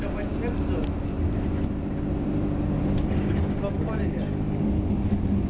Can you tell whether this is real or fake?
real